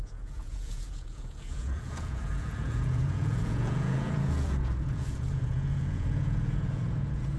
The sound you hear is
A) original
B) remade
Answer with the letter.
B